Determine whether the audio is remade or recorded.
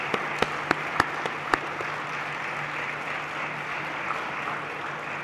recorded